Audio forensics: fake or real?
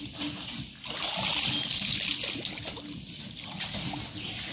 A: real